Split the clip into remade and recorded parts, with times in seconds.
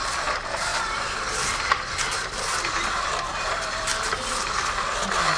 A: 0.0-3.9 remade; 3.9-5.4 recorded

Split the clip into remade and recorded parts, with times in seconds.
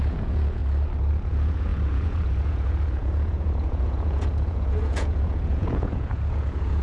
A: 0.0-0.6 remade; 0.6-1.1 recorded; 1.1-6.8 remade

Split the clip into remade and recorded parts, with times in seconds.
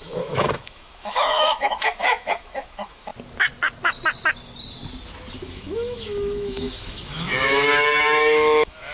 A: 0.0-3.1 remade; 3.1-5.4 recorded; 5.4-8.9 remade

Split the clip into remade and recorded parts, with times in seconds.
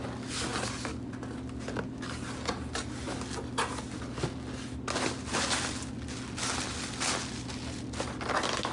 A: 0.0-8.7 recorded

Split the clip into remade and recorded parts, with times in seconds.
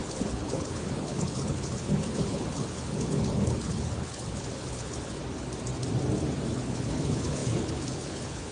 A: 0.0-5.2 remade; 5.2-6.5 recorded; 6.5-8.5 remade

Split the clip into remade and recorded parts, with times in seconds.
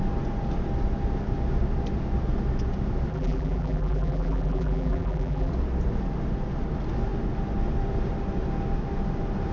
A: 0.0-3.1 recorded; 3.1-5.5 remade; 5.5-9.5 recorded